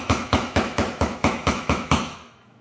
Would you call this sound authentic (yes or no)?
no